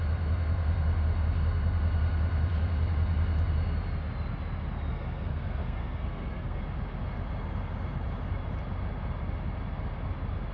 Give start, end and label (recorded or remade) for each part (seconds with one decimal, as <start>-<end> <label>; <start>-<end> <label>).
0.0-4.9 recorded; 4.9-6.6 remade; 6.6-10.5 recorded